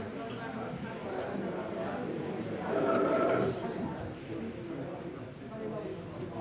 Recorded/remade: recorded